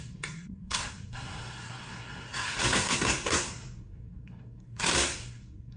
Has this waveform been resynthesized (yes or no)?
yes